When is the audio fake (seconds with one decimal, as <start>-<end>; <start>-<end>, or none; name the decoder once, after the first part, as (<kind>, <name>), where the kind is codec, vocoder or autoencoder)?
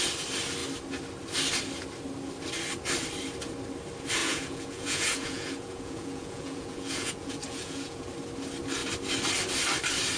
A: 4.2-8.1 (vocoder, Vocos)